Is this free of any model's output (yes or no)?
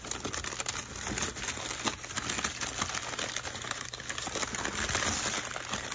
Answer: yes